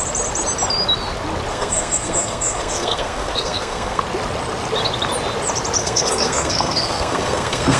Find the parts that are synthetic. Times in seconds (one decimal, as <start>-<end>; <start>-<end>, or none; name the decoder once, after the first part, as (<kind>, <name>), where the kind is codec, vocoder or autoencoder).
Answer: 1.5-4.0 (codec, SNAC); 5.8-7.8